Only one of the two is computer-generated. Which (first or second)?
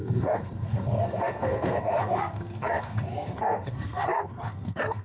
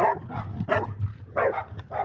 first